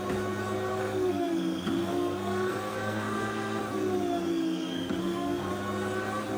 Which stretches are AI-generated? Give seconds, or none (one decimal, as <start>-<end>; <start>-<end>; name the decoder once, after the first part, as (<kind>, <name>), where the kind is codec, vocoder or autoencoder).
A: 0.7-3.6 (codec, SNAC); 4.3-5.5